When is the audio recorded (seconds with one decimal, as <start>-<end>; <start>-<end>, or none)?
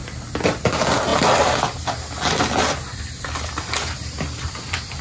0.0-1.1; 2.4-2.9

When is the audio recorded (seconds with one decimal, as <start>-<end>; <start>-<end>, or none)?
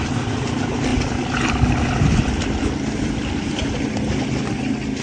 none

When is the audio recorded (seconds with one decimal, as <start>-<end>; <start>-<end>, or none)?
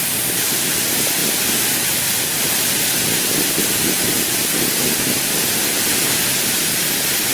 0.0-7.3